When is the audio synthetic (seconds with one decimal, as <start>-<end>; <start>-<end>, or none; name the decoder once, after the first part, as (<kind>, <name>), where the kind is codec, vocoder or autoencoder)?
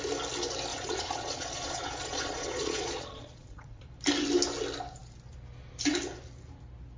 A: 0.7-3.8 (vocoder, Vocos)